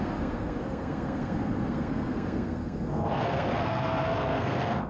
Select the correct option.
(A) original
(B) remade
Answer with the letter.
B